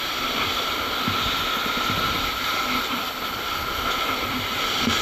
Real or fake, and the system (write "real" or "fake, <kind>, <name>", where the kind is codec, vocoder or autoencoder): real